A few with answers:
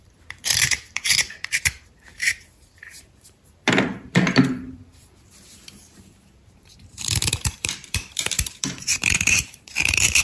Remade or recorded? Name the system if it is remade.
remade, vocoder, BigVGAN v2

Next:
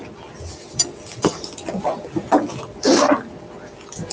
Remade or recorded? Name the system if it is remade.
recorded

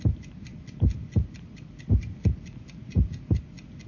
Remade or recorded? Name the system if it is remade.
recorded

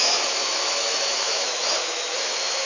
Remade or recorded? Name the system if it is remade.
remade, autoencoder, DAC-VAE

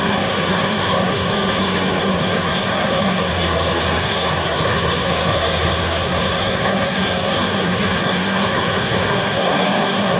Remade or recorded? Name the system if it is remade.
remade, codec, SNAC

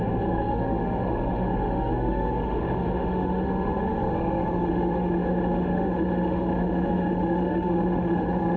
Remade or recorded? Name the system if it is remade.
remade, autoencoder, DAC-VAE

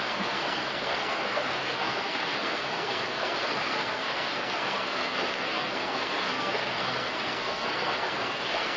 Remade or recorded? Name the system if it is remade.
remade, codec, SNAC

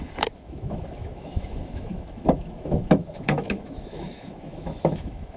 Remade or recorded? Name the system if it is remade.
remade, autoencoder, DAC-VAE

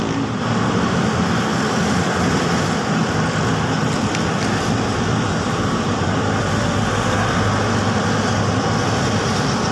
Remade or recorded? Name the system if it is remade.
recorded